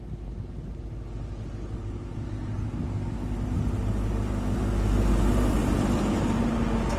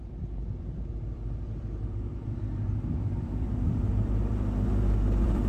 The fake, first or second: second